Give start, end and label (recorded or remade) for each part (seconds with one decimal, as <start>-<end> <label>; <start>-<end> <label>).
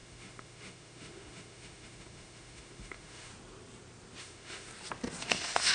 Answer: 0.0-3.3 remade; 3.3-4.2 recorded; 4.2-4.7 remade; 4.7-5.2 recorded; 5.2-5.7 remade